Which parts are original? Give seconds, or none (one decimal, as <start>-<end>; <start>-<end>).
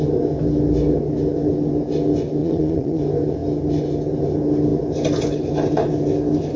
0.0-2.4; 3.0-6.6